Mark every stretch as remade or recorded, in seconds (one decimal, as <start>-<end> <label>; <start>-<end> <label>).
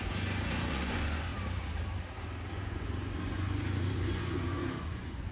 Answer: 0.0-1.3 remade; 1.3-2.5 recorded; 2.5-5.3 remade